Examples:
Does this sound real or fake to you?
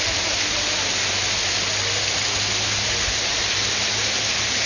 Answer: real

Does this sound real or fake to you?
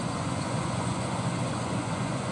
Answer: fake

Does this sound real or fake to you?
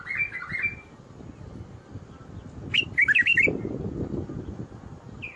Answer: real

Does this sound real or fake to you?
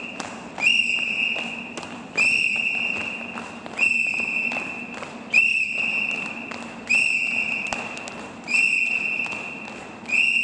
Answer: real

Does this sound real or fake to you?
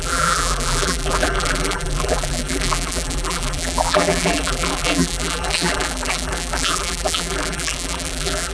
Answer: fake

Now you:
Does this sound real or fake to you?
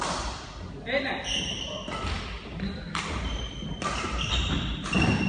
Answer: real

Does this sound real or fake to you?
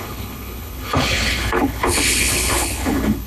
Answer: fake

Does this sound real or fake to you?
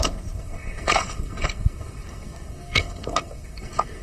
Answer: fake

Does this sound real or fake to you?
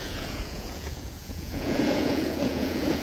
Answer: fake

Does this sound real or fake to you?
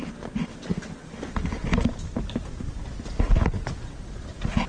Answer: real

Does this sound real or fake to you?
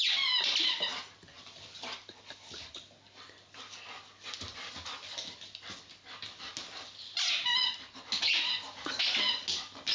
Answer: real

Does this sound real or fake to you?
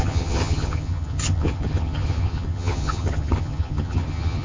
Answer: fake